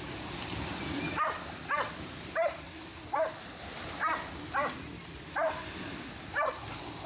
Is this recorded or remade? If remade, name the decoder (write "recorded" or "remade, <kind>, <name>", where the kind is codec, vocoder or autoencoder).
recorded